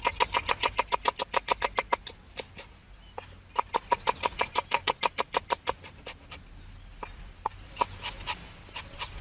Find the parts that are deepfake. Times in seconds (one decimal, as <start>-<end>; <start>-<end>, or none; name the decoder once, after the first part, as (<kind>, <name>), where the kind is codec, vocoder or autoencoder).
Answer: 6.9-7.7 (vocoder, BigVGAN v2)